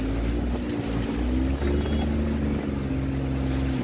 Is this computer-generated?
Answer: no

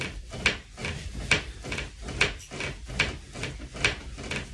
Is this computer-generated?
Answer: no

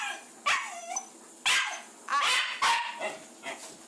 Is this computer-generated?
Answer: no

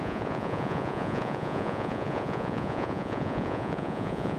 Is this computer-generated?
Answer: yes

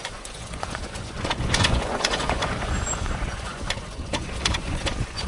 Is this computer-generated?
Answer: yes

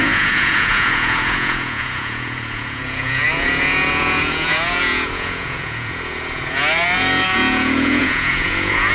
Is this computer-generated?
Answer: yes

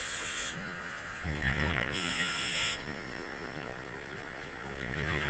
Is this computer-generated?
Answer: yes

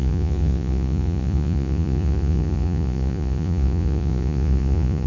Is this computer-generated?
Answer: yes